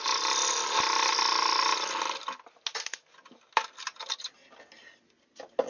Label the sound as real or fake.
real